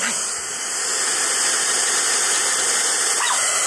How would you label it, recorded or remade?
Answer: recorded